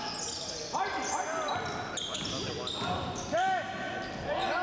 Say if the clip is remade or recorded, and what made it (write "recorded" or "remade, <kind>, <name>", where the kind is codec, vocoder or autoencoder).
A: recorded